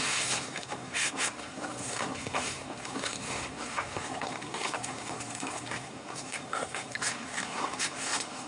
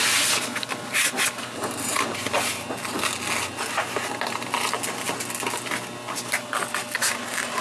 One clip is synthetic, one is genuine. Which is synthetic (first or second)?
first